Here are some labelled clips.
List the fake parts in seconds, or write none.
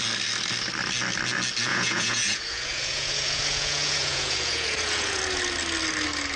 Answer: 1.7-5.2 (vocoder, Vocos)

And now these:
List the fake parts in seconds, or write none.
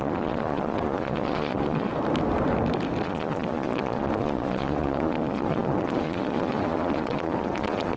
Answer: 0.0-1.9 (vocoder, Vocos); 3.0-8.0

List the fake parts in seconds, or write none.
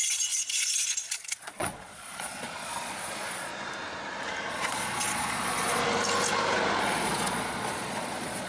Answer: 0.0-3.5 (vocoder, Vocos); 4.5-5.8; 6.8-8.5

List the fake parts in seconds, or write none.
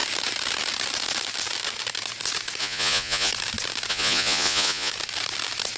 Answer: 2.6-3.3 (vocoder, Vocos); 3.9-4.9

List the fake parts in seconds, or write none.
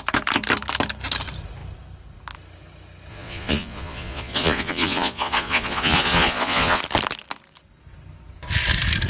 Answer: 3.1-6.8 (vocoder, Vocos)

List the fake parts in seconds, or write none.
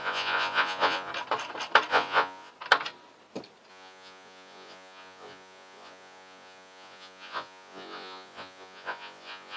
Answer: 0.0-1.1 (vocoder, Vocos); 1.9-2.5; 3.7-9.6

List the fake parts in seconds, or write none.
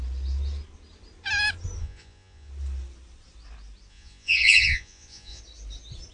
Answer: 1.8-2.5 (vocoder, Vocos); 3.9-5.4